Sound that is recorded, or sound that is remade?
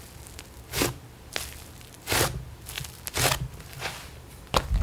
recorded